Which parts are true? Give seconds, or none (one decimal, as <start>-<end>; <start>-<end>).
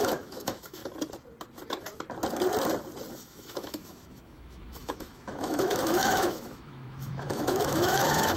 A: 0.8-3.1